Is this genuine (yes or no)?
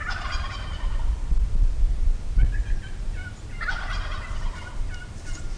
no